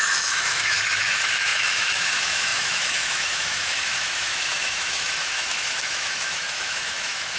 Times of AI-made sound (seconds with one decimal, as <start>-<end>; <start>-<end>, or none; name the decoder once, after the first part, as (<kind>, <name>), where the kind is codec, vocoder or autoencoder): 0.0-7.4 (autoencoder, DAC-VAE)

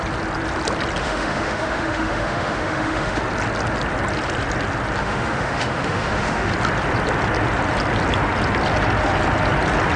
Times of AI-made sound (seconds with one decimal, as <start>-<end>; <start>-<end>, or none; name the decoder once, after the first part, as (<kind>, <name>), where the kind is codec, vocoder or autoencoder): 1.0-3.2 (autoencoder, DAC-VAE); 5.0-6.5

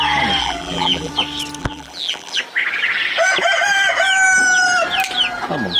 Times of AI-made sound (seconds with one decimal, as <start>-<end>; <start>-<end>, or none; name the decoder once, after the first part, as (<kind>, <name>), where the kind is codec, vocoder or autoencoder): 0.4-1.1 (vocoder, BigVGAN v2); 1.6-2.4

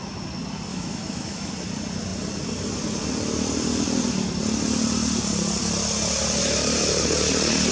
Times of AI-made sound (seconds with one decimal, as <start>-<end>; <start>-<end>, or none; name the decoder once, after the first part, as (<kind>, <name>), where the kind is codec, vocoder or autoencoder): 0.7-1.5 (autoencoder, DAC-VAE)

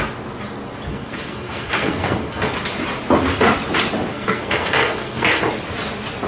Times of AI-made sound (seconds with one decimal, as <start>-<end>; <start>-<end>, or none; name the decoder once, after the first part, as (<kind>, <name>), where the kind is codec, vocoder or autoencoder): 0.9-2.5 (codec, SNAC); 4.1-5.4